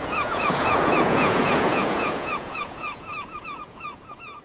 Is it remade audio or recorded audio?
remade